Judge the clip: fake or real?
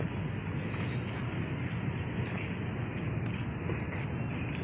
real